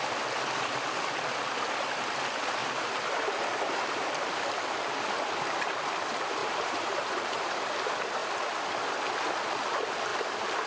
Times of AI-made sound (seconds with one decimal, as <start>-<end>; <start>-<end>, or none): 2.6-4.4; 6.4-7.7